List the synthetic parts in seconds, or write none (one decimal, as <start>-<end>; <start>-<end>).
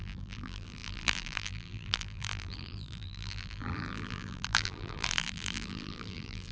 0.0-6.5